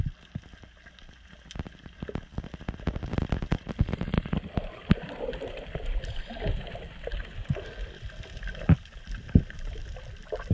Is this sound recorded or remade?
remade